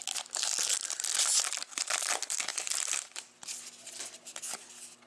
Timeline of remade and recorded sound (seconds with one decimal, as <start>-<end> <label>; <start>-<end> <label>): 0.0-5.1 recorded